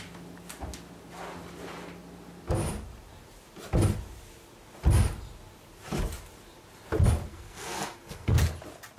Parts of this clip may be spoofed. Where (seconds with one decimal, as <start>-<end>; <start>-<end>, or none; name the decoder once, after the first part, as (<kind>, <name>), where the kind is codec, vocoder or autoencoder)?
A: 7.3-8.4 (codec, SNAC)